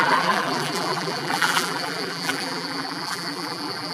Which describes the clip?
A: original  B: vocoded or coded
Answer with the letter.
B